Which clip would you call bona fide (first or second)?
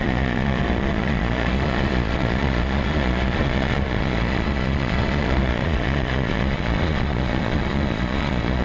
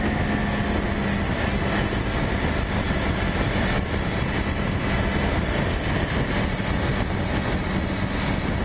second